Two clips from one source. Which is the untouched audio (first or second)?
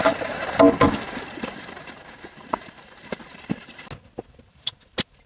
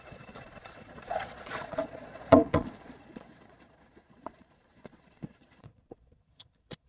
first